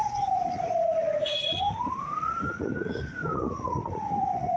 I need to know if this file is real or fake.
fake